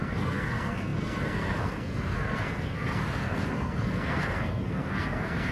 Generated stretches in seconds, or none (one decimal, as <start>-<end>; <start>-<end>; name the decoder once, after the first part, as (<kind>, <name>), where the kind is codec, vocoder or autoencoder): 0.0-5.5 (codec, SNAC)